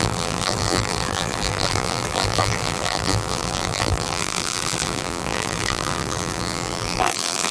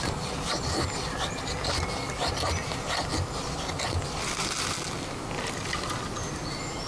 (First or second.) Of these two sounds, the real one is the second